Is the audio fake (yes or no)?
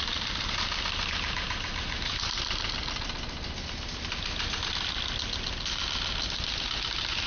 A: no